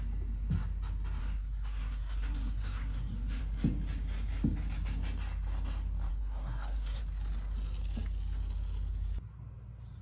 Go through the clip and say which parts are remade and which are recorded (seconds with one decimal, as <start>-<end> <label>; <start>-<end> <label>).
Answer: 0.0-1.2 recorded; 1.2-3.4 remade; 3.4-6.1 recorded; 6.1-7.0 remade; 7.0-10.0 recorded